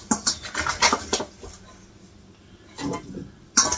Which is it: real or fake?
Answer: real